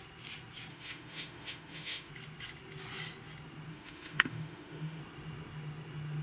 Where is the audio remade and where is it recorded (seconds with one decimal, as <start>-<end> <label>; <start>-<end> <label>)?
0.0-0.7 recorded; 0.7-2.1 remade; 2.1-3.7 recorded; 3.7-5.0 remade; 5.0-6.2 recorded

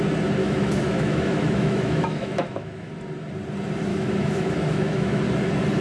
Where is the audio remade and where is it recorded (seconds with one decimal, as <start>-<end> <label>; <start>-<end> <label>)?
0.0-0.4 recorded; 0.4-2.9 remade; 2.9-3.9 recorded; 3.9-5.2 remade; 5.2-5.8 recorded

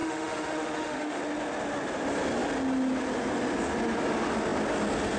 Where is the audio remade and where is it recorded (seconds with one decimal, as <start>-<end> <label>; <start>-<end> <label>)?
0.0-1.2 remade; 1.2-5.2 recorded

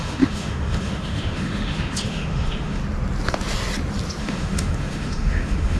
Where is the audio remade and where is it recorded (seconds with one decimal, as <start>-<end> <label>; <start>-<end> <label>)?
0.0-2.8 remade; 2.8-4.2 recorded; 4.2-5.8 remade

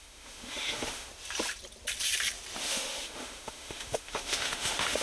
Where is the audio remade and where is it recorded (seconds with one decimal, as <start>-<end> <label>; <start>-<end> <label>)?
0.0-1.1 remade; 1.1-2.6 recorded; 2.6-5.0 remade

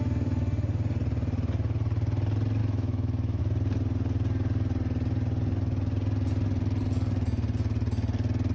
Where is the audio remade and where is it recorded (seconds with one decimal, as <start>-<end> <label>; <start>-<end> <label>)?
0.0-2.6 recorded; 2.6-3.4 remade; 3.4-8.5 recorded

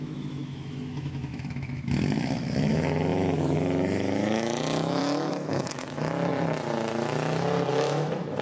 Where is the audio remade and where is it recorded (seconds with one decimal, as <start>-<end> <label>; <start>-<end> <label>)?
0.0-6.3 remade; 6.3-7.7 recorded; 7.7-8.4 remade

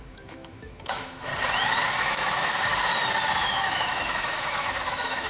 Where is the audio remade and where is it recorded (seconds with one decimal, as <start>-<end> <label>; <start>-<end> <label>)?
0.0-1.3 remade; 1.3-2.0 recorded; 2.0-2.7 remade; 2.7-3.4 recorded; 3.4-5.3 remade